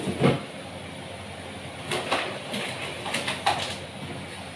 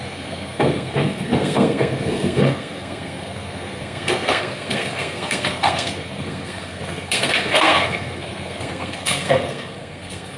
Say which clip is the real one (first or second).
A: first